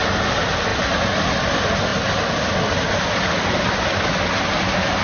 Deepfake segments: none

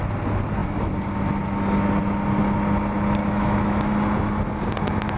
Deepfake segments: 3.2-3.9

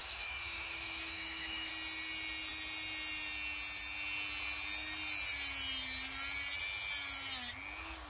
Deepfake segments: 0.0-1.7